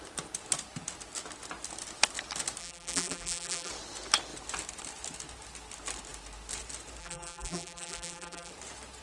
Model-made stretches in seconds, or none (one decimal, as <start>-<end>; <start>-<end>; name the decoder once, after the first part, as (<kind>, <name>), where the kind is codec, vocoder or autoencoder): 2.6-3.7 (vocoder, BigVGAN v2); 7.0-8.5